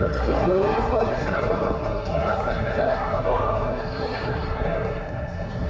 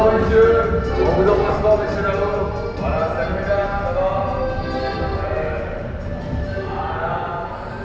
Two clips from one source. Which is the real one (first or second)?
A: second